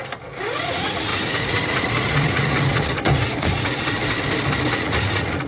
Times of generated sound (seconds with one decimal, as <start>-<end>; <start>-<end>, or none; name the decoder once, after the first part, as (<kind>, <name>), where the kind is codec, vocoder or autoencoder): 0.5-4.0 (vocoder, Vocos); 4.7-5.5